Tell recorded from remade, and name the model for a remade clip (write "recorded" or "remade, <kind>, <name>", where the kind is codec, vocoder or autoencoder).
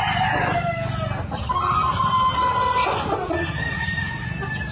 recorded